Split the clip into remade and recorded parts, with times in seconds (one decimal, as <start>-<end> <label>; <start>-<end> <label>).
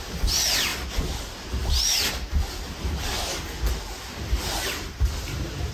0.0-5.7 recorded